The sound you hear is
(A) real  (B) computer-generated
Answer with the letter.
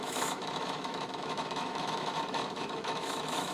B